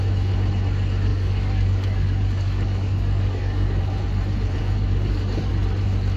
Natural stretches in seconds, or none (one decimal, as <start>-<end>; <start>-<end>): 0.0-1.1; 3.8-4.6; 5.5-6.2

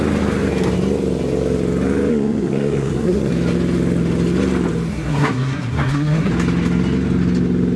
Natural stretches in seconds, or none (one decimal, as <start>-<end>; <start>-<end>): 0.0-2.1; 3.3-4.9; 6.3-7.8

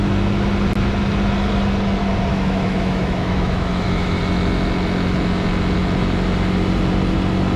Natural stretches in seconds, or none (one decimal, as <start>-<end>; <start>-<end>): 0.0-2.3; 4.2-7.6

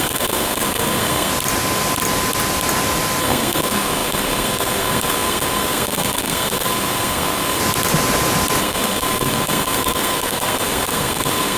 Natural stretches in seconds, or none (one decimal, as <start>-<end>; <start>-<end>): 1.3-3.2; 7.6-8.6

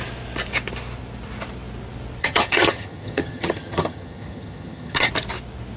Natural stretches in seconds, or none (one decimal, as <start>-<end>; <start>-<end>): 0.0-2.2; 5.1-5.8

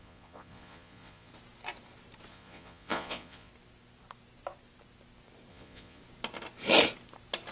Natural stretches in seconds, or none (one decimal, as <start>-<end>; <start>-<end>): 1.3-2.3; 3.5-5.5; 6.0-7.5

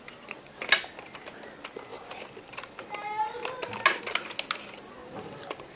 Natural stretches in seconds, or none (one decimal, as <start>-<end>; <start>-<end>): 0.0-5.0